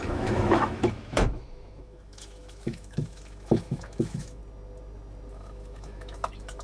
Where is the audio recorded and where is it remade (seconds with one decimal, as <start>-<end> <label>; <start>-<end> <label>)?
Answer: 0.0-4.4 remade; 4.4-5.3 recorded; 5.3-6.6 remade